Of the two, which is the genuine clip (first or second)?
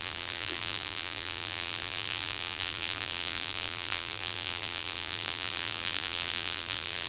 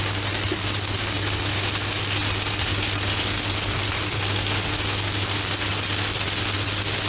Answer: second